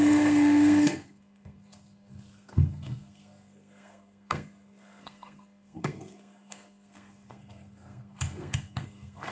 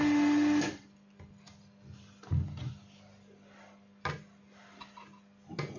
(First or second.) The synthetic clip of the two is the first